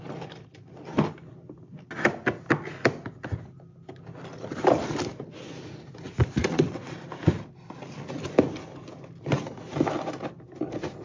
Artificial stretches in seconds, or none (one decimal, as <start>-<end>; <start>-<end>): 6.4-6.9